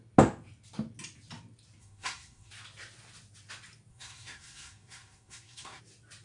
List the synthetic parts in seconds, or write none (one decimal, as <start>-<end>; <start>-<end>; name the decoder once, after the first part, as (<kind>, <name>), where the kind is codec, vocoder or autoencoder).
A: 1.8-2.5 (codec, SNAC); 3.9-5.8